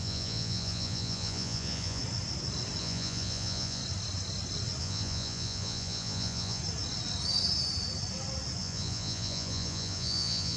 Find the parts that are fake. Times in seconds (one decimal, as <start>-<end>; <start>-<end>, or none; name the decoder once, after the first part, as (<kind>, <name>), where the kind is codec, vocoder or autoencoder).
0.0-2.0 (vocoder, Vocos); 2.8-3.8; 4.8-6.6; 8.6-10.6